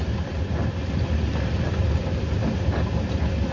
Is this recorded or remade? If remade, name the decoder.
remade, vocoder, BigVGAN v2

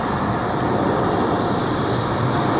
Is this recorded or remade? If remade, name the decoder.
recorded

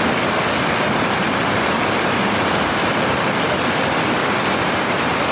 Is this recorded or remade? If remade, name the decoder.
recorded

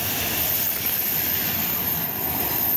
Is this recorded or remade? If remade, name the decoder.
remade, vocoder, BigVGAN v2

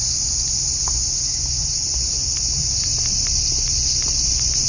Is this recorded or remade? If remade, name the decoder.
remade, vocoder, BigVGAN v2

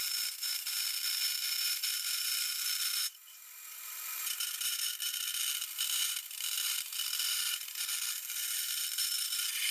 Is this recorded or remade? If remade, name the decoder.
remade, vocoder, BigVGAN v2